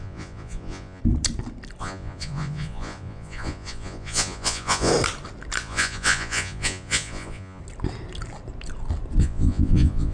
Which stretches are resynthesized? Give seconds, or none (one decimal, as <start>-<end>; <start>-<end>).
0.0-1.0; 1.8-4.9; 5.6-7.6; 9.2-10.1